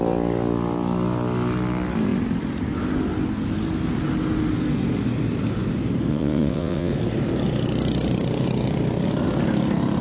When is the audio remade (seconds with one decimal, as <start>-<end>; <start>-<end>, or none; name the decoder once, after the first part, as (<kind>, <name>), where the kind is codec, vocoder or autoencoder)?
6.1-6.9 (vocoder, WaveNeXt)